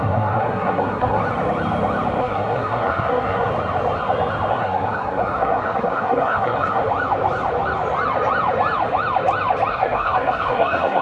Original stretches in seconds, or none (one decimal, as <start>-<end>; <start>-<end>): 1.2-2.2; 3.5-4.5; 6.8-9.7